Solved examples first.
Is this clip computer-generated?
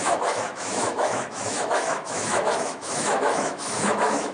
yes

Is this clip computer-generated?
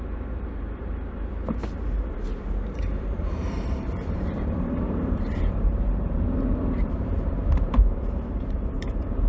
yes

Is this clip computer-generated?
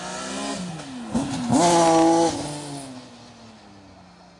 no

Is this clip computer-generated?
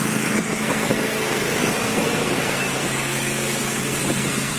yes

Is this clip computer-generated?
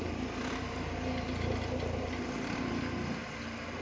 no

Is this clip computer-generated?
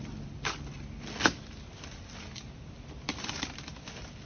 no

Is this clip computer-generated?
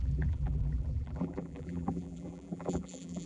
yes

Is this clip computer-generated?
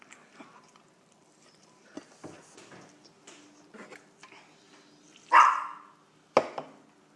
no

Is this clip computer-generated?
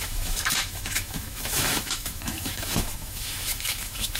yes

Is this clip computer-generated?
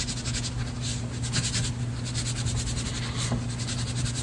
no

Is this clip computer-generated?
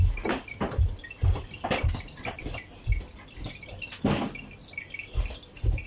no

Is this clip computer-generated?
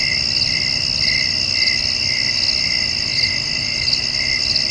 no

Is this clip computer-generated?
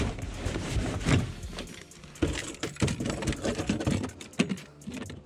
no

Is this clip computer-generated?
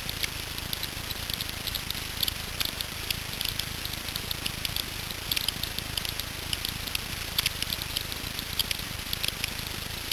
no